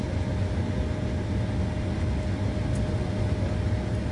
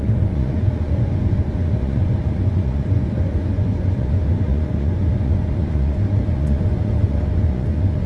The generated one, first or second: second